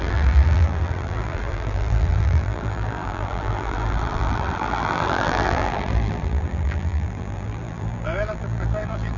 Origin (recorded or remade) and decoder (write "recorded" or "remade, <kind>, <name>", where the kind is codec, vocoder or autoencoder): remade, vocoder, BigVGAN v2